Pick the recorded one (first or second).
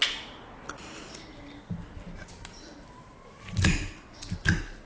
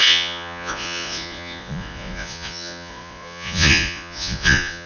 first